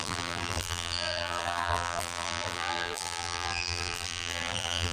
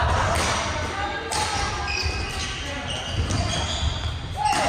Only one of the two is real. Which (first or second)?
second